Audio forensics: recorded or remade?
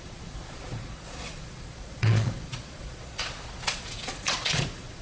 remade